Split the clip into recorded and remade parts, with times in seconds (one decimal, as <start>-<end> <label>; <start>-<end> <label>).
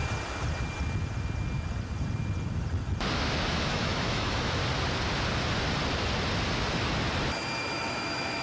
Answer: 0.0-3.5 recorded; 3.5-4.6 remade; 4.6-7.6 recorded; 7.6-8.4 remade